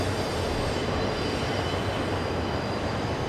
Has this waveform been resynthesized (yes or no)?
no